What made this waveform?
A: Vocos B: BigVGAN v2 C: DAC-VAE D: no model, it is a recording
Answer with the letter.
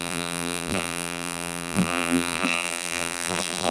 B